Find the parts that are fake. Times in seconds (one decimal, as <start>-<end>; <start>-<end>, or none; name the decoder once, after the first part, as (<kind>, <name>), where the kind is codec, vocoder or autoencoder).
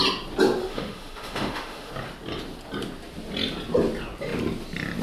0.6-1.9 (autoencoder, DAC-VAE)